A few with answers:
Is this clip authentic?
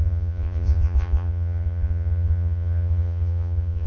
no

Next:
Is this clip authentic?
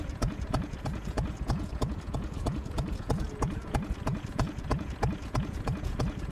no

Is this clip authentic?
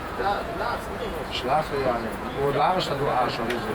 no